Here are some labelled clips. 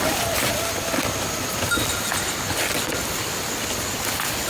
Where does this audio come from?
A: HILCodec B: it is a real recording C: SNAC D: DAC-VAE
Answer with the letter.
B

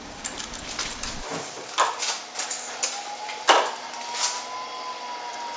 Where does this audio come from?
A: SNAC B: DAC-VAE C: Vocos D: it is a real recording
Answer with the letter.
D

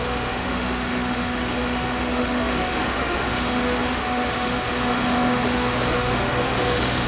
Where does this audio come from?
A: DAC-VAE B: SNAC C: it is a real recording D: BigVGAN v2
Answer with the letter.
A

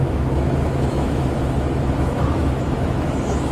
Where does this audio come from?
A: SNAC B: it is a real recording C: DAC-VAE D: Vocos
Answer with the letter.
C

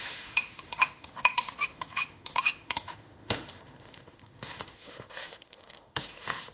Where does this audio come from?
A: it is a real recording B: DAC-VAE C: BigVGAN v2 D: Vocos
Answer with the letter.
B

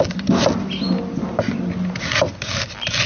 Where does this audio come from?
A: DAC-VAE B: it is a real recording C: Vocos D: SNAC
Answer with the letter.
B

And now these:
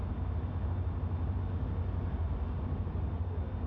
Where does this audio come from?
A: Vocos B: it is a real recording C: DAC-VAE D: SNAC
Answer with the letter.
B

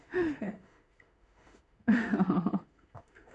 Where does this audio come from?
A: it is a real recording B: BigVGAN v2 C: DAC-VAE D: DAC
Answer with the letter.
C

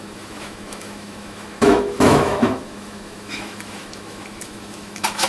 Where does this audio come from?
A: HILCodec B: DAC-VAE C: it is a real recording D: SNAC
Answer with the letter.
B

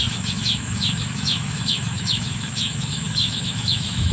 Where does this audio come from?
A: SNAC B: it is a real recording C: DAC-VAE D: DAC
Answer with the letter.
C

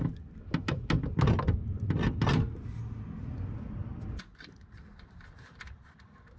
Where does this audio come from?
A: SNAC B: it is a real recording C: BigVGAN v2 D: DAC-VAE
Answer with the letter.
B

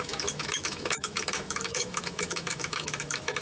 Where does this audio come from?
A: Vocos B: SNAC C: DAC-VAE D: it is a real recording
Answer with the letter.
C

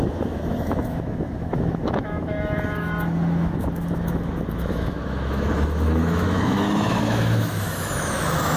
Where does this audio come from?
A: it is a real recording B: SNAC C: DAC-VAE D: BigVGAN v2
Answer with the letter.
C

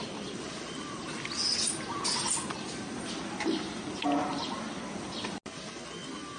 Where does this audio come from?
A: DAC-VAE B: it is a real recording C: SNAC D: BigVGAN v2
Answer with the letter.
B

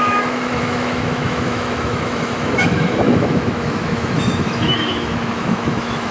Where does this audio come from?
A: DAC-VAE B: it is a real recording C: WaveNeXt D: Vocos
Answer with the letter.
A